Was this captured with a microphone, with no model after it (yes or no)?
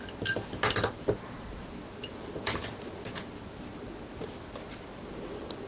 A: yes